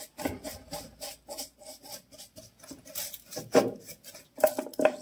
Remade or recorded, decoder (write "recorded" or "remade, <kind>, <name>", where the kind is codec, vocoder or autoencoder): recorded